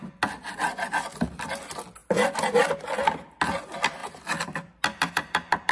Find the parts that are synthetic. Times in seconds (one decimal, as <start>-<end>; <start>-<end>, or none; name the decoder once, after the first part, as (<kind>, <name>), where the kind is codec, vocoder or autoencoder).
none